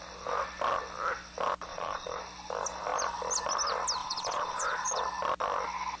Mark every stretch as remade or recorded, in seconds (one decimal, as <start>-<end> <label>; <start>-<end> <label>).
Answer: 0.0-1.7 recorded; 1.7-2.2 remade; 2.2-4.0 recorded; 4.0-5.0 remade; 5.0-6.0 recorded